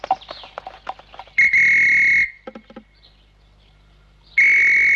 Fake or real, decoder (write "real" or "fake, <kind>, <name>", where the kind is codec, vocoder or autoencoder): real